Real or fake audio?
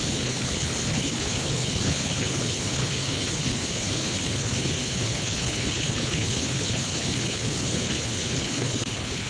fake